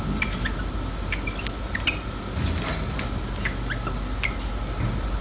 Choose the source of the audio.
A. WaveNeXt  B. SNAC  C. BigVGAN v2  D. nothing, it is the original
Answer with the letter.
D